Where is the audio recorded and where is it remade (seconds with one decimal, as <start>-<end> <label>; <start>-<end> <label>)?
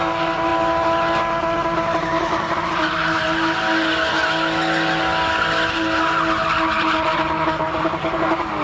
0.0-8.6 recorded